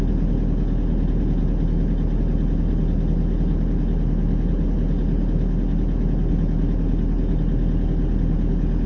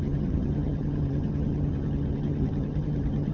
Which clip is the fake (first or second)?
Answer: second